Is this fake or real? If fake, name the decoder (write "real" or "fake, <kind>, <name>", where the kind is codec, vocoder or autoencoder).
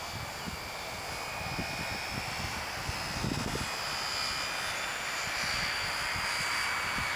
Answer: real